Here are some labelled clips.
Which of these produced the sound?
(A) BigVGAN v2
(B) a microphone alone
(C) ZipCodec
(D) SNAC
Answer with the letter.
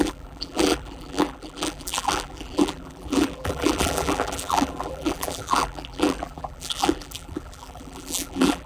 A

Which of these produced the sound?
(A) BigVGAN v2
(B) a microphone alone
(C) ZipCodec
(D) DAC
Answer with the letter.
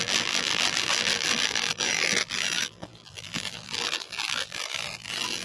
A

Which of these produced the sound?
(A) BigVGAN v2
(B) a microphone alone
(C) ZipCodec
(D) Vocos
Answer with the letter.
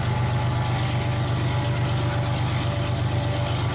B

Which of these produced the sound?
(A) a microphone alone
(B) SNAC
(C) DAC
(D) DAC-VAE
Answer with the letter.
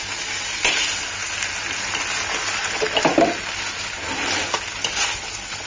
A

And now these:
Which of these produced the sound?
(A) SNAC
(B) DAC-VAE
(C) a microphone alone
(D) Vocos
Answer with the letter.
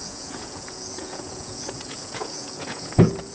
D